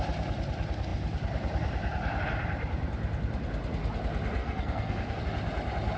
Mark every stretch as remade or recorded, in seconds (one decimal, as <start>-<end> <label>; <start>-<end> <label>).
0.0-4.4 recorded; 4.4-5.2 remade; 5.2-6.0 recorded